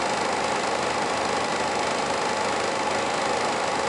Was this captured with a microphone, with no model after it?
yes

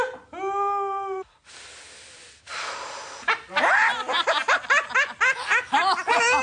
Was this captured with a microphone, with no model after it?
yes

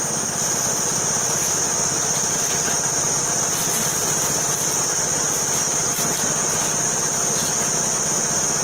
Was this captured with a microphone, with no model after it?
yes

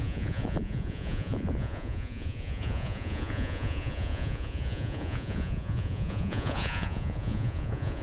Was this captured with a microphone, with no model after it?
no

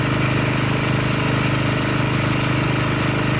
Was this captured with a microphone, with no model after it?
yes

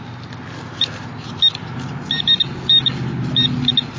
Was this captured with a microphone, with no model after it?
yes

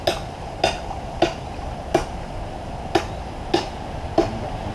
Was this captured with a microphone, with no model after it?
yes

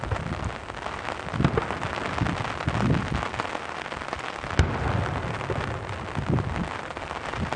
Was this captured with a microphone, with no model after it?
yes